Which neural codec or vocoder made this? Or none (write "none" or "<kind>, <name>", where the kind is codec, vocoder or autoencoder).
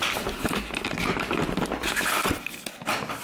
none